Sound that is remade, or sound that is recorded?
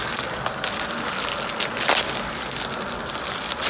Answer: recorded